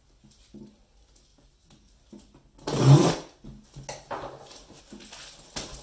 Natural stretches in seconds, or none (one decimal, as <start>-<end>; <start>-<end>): 0.0-5.8